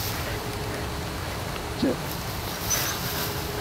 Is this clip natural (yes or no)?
yes